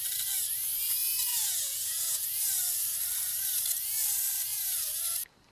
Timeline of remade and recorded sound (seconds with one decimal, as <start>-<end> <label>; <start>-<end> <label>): 0.0-1.3 recorded; 1.3-2.4 remade; 2.4-4.5 recorded; 4.5-5.0 remade; 5.0-5.5 recorded